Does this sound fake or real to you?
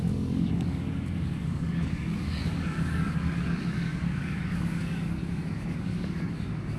fake